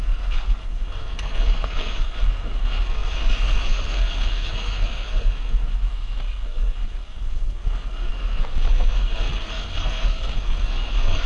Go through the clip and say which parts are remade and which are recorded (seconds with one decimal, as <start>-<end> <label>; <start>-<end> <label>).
0.0-11.3 remade